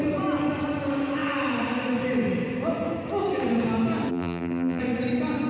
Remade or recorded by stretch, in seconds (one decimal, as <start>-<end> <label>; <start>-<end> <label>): 0.0-4.1 recorded; 4.1-4.8 remade; 4.8-5.5 recorded